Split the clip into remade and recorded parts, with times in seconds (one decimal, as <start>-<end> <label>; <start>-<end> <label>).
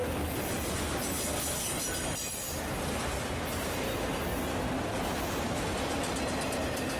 0.0-7.0 recorded